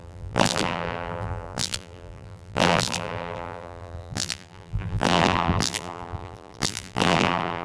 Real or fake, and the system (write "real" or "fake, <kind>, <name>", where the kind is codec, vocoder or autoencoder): fake, vocoder, BigVGAN v2